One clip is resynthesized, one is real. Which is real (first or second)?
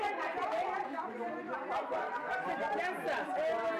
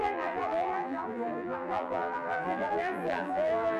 first